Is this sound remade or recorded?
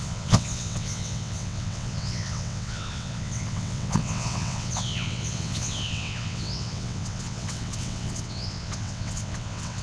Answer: remade